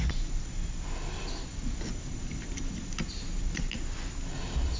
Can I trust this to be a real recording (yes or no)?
yes